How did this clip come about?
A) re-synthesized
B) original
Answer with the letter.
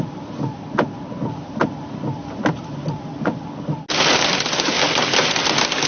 B